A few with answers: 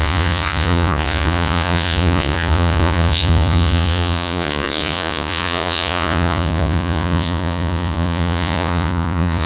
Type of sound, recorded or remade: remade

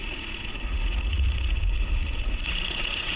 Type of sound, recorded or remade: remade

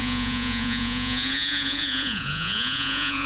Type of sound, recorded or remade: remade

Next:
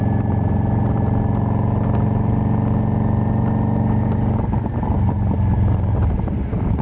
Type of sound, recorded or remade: recorded